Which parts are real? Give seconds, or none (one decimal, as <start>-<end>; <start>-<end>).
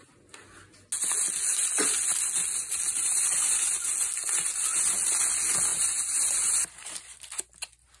0.0-5.7; 7.2-8.0